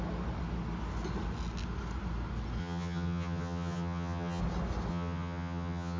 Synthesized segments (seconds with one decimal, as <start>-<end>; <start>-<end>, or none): 2.6-4.4; 4.9-6.0